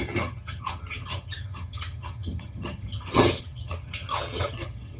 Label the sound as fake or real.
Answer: fake